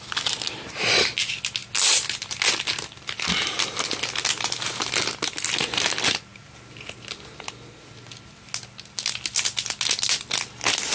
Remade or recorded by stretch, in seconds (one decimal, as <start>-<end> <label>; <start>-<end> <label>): 0.0-10.9 recorded